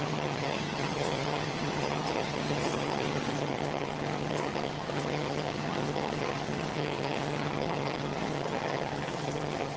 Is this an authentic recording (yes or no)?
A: no